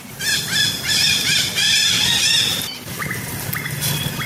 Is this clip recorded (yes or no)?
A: yes